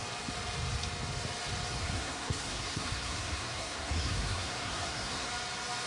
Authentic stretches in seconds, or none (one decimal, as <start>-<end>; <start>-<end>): 0.0-1.8; 5.3-5.9